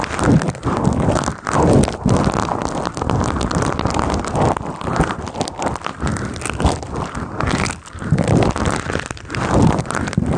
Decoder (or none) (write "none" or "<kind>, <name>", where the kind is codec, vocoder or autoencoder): none